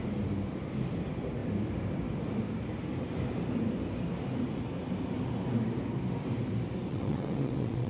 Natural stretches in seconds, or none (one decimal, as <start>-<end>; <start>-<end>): 0.0-6.9